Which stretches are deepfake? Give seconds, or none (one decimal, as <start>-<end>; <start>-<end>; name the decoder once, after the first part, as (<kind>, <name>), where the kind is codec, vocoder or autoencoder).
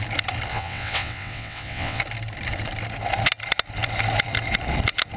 0.5-2.0 (vocoder, WaveNeXt)